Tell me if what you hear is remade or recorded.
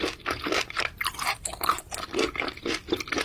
recorded